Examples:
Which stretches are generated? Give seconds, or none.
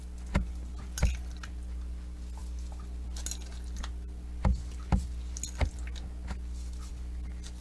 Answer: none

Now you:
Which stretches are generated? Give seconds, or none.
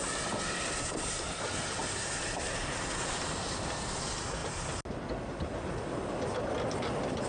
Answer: none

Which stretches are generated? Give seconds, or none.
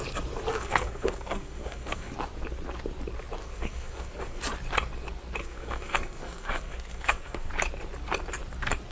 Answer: 0.5-2.1 (codec, SNAC); 3.4-4.4; 5.4-7.5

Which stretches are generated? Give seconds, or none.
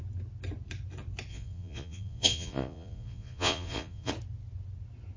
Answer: 1.3-4.1 (vocoder, Vocos)